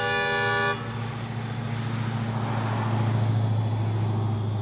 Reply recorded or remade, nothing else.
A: recorded